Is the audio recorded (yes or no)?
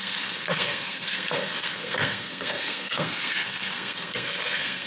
no